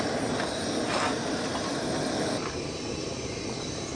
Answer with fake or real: real